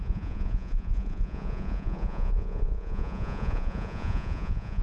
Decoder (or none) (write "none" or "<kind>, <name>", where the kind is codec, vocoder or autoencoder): vocoder, Vocos